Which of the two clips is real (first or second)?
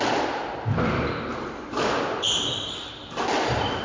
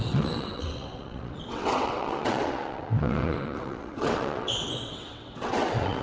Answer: first